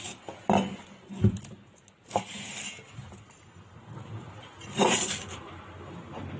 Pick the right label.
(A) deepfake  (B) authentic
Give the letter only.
B